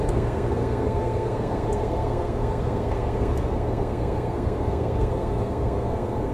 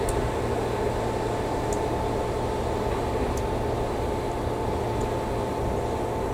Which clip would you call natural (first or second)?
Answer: second